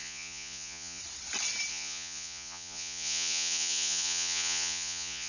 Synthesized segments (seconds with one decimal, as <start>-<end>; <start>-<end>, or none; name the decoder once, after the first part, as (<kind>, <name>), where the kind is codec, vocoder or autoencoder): 0.0-1.0 (vocoder, Vocos); 1.7-5.3